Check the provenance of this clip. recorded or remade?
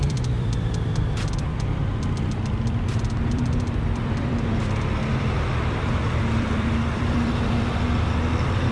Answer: remade